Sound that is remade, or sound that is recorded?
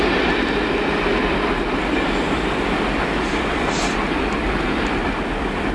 recorded